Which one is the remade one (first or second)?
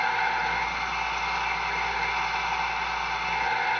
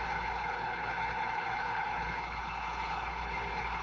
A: second